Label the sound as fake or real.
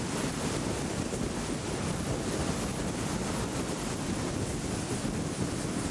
real